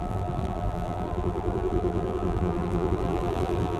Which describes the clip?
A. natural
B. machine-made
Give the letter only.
B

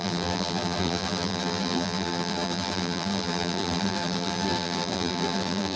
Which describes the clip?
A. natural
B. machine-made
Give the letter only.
B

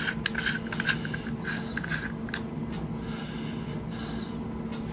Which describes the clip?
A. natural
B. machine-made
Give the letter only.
A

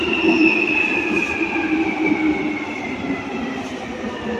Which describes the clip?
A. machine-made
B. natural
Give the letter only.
A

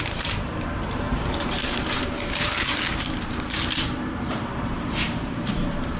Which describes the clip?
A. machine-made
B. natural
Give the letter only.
A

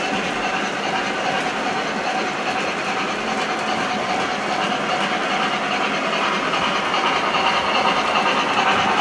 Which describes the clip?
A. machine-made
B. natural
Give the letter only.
B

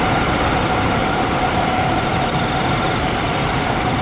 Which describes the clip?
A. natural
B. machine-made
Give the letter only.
B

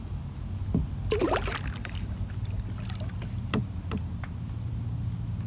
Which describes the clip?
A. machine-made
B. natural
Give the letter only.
B